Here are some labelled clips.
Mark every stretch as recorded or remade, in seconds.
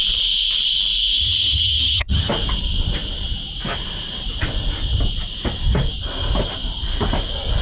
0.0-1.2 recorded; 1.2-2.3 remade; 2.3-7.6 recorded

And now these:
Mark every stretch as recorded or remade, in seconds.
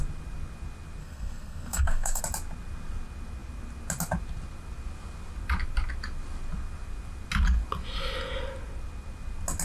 0.0-1.0 recorded; 1.0-2.2 remade; 2.2-9.6 recorded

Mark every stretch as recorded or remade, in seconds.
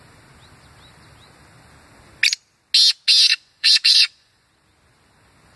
0.0-3.3 recorded; 3.3-4.5 remade; 4.5-5.6 recorded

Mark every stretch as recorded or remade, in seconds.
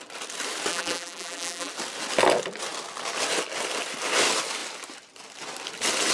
0.0-0.7 recorded; 0.7-1.7 remade; 1.7-6.1 recorded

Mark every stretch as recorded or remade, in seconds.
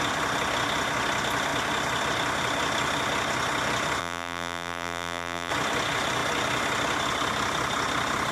0.0-4.0 recorded; 4.0-5.5 remade; 5.5-8.3 recorded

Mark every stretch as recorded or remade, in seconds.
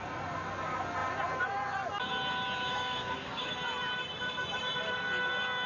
0.0-2.7 recorded; 2.7-3.5 remade; 3.5-5.7 recorded